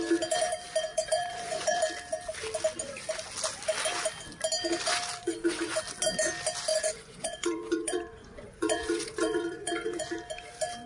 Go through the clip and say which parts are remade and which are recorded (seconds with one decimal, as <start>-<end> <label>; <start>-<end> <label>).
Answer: 0.0-0.9 recorded; 0.9-1.8 remade; 1.8-5.2 recorded; 5.2-5.8 remade; 5.8-6.7 recorded; 6.7-10.1 remade; 10.1-10.9 recorded

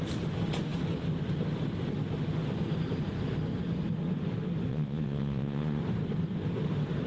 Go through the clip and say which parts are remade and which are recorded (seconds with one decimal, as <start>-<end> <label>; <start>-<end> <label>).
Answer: 0.0-4.7 recorded; 4.7-5.8 remade; 5.8-7.1 recorded